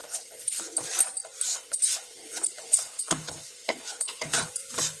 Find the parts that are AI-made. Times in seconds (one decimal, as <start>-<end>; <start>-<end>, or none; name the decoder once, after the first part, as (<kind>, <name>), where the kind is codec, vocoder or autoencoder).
0.0-0.6 (codec, HILCodec); 1.5-4.5